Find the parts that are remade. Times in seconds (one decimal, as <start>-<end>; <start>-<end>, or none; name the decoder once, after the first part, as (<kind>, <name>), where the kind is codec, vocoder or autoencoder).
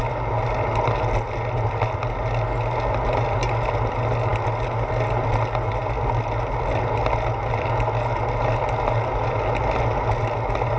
none